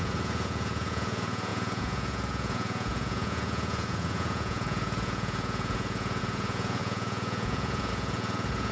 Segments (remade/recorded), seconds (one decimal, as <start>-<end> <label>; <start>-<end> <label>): 0.0-8.7 remade

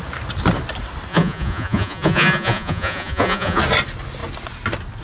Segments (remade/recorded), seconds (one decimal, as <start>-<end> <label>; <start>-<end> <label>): 0.0-1.1 recorded; 1.1-3.6 remade; 3.6-5.0 recorded

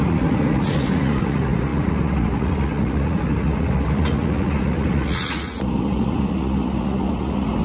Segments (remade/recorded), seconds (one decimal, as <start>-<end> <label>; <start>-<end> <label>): 0.0-7.6 remade

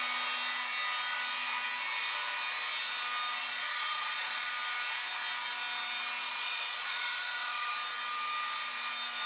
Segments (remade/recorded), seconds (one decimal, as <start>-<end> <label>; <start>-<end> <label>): 0.0-3.4 recorded; 3.4-4.5 remade; 4.5-6.2 recorded; 6.2-7.7 remade; 7.7-9.3 recorded

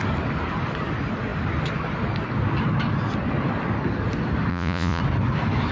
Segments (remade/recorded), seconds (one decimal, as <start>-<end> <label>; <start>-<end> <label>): 0.0-4.5 recorded; 4.5-5.0 remade; 5.0-5.7 recorded

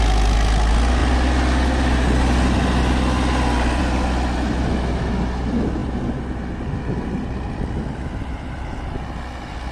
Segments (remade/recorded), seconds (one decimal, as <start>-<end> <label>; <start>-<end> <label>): 0.0-9.7 recorded

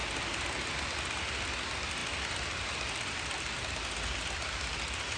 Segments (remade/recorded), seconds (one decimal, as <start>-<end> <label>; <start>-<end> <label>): 0.0-5.2 recorded

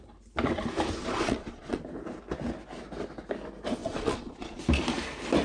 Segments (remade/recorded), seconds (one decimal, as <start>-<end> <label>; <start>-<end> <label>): 0.0-1.0 recorded; 1.0-1.8 remade; 1.8-3.8 recorded; 3.8-4.6 remade; 4.6-5.4 recorded